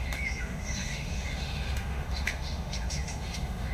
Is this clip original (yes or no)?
no